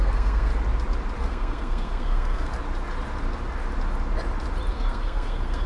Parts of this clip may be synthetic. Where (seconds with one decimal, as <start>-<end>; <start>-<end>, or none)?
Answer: 0.0-0.5; 1.2-2.5; 4.7-5.7